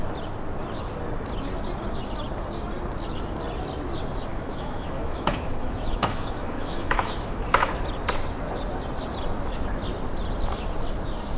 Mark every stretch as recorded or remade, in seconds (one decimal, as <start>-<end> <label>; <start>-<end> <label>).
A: 0.0-4.3 recorded; 4.3-7.7 remade; 7.7-11.4 recorded